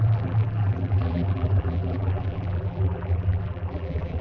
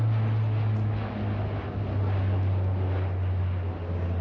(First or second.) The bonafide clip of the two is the second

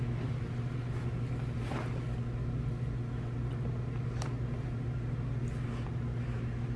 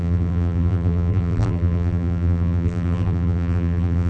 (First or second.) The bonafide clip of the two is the first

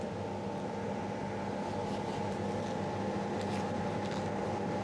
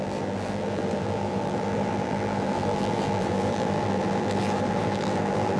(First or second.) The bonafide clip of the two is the first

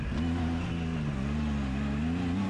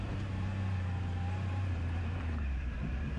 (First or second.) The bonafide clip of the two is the first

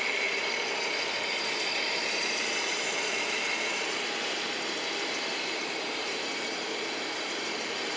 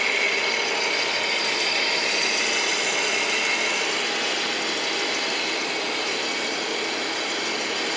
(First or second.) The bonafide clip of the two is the second